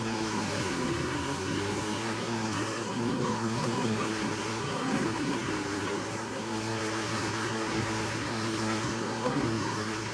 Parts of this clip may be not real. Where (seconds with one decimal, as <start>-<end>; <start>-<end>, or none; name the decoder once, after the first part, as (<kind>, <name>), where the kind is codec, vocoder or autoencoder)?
0.0-10.1 (codec, SNAC)